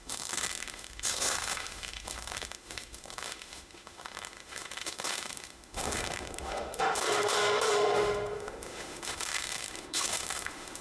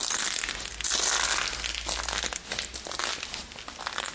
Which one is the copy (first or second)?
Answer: first